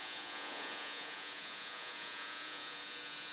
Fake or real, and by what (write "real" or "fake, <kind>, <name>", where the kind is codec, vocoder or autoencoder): fake, vocoder, Vocos